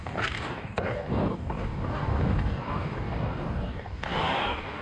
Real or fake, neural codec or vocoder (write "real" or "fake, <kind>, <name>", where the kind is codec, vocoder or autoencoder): fake, codec, DAC